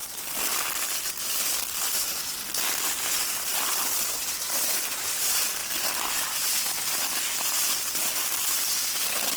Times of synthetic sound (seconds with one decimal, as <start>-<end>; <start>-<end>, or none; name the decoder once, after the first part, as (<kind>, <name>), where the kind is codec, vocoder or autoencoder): none